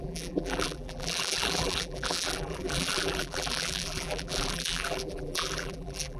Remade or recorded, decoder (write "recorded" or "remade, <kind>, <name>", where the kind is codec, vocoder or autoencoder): remade, vocoder, BigVGAN v2